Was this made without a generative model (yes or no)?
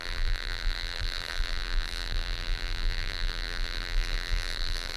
no